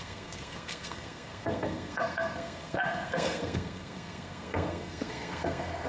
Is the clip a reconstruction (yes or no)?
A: yes